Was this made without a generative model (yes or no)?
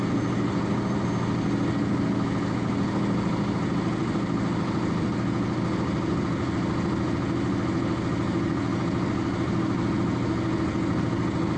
yes